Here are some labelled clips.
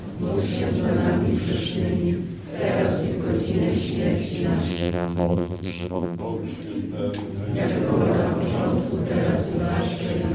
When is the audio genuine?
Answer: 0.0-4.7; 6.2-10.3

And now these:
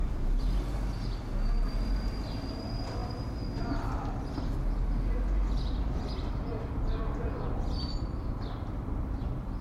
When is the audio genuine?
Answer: 0.0-9.6

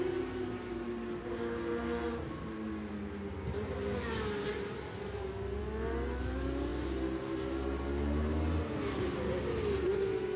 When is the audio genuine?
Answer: 0.0-10.4

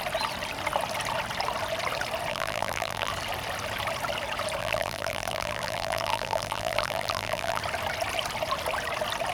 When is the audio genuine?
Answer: 0.0-2.3; 3.1-4.6; 7.6-9.3